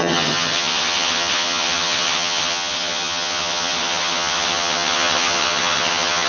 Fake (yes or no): yes